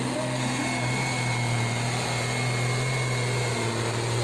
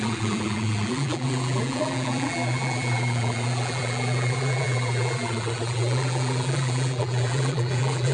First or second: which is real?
first